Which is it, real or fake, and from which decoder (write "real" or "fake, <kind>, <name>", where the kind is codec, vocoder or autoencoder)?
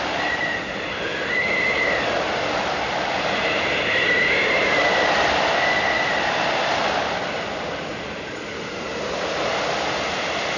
real